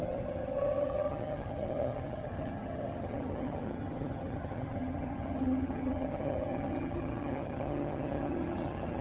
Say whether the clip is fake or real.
fake